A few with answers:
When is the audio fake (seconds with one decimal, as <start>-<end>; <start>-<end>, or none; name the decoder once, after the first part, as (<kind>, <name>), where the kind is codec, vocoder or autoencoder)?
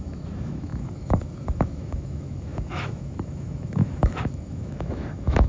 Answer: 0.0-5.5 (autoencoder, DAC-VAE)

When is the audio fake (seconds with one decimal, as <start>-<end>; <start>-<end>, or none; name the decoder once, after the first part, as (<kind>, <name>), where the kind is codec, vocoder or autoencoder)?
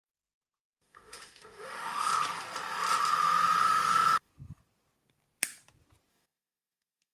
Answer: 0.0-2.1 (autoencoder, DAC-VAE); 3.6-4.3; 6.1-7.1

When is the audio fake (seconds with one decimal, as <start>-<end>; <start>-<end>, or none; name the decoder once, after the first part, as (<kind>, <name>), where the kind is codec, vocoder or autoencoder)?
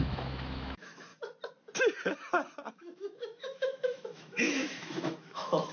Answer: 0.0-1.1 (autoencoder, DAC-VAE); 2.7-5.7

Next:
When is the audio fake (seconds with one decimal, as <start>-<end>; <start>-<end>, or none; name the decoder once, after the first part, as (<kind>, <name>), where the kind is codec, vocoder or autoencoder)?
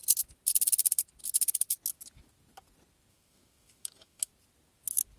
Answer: 3.1-4.3 (autoencoder, DAC-VAE)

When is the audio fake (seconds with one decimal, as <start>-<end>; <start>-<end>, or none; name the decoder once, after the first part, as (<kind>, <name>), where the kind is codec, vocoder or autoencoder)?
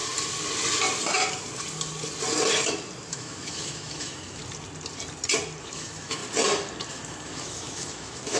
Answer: 3.1-4.4 (autoencoder, DAC-VAE); 5.6-6.2; 6.9-8.4